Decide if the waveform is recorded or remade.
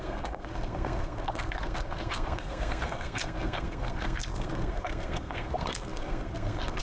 remade